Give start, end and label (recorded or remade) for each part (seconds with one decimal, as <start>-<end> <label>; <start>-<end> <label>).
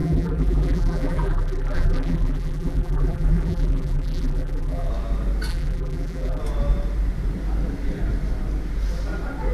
0.0-4.9 remade; 4.9-5.5 recorded; 5.5-6.4 remade; 6.4-9.5 recorded